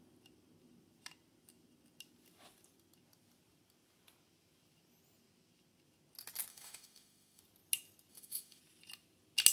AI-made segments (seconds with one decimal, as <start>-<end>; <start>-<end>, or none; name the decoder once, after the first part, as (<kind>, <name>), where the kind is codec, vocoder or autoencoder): 6.5-7.4 (autoencoder, DAC-VAE); 8.1-8.6